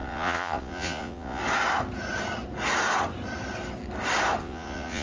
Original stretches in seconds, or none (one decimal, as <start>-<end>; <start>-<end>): 1.4-4.4